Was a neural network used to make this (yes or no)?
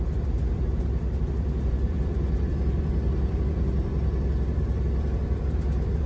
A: yes